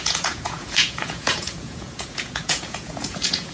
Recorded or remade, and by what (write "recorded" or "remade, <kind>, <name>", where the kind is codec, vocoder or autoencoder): remade, vocoder, Vocos